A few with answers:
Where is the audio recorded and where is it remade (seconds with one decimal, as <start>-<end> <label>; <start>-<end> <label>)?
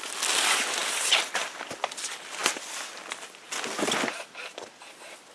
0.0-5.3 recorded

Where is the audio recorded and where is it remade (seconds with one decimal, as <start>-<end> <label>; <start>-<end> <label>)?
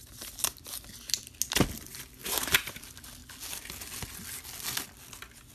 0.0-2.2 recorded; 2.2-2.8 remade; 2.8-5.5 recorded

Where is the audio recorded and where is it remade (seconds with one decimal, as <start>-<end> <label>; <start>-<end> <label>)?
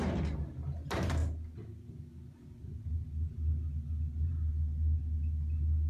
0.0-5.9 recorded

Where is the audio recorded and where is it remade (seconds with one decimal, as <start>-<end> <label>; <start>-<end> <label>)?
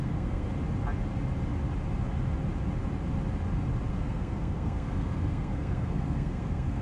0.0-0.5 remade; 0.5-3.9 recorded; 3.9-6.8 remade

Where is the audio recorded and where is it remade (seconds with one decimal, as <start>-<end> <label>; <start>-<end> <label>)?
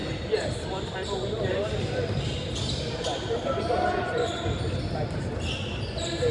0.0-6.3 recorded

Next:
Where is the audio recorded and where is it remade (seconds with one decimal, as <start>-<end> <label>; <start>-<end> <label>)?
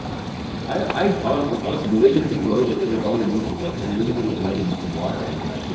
0.0-1.5 recorded; 1.5-4.9 remade; 4.9-5.7 recorded